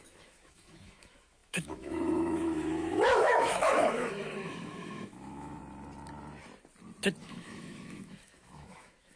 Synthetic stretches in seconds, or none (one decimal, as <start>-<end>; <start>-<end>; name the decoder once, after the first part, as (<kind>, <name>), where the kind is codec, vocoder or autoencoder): 0.0-5.6 (autoencoder, DAC-VAE); 7.2-9.2